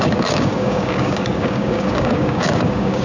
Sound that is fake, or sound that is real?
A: fake